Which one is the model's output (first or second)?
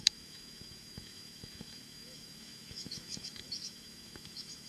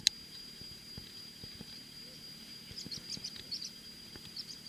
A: first